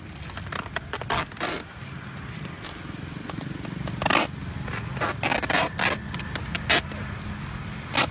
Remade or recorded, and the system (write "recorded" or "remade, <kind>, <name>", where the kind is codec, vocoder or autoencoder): recorded